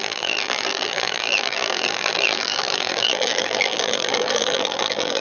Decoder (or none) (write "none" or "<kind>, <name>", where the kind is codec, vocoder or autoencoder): vocoder, BigVGAN v2